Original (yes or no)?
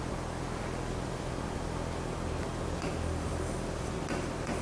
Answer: yes